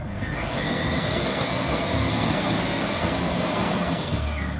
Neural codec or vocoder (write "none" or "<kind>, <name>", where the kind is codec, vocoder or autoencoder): codec, SNAC